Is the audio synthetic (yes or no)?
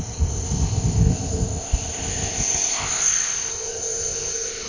yes